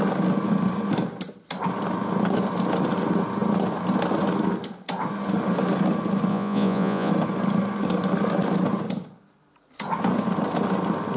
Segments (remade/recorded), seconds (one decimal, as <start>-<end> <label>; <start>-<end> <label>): 0.0-6.3 recorded; 6.3-7.1 remade; 7.1-11.2 recorded